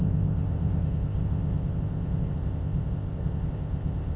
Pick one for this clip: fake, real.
fake